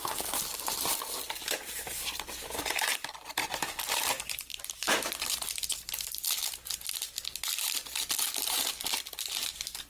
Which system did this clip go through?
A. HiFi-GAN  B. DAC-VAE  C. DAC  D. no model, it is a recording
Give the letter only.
D